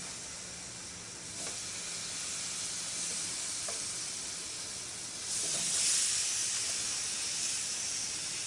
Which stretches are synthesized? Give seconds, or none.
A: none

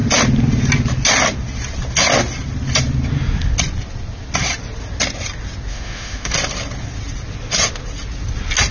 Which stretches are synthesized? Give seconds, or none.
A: 5.7-6.3 (autoencoder, DAC-VAE)

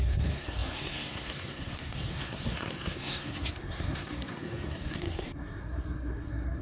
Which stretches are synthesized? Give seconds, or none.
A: 0.0-6.6 (codec, SNAC)